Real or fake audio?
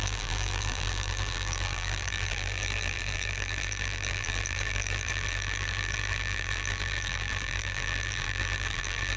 fake